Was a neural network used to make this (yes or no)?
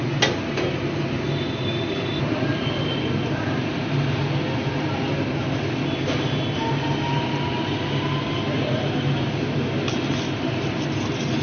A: no